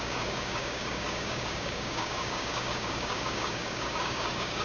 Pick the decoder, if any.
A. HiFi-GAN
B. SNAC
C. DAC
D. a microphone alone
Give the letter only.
C